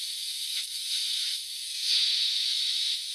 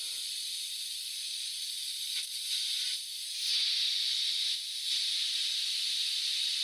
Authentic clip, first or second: second